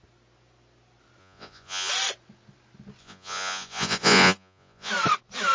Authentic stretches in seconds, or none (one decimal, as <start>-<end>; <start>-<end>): 0.0-1.2; 1.9-3.0; 4.9-5.5